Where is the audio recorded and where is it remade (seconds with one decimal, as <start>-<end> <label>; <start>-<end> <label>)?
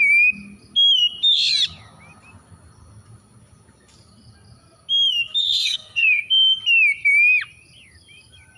0.0-5.4 recorded; 5.4-6.3 remade; 6.3-8.6 recorded